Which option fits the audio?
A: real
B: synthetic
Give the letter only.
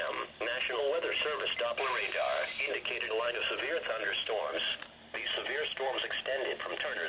A